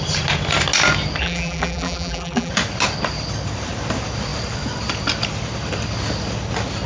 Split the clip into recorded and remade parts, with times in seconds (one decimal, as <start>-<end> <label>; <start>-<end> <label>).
0.0-1.2 recorded; 1.2-2.5 remade; 2.5-6.9 recorded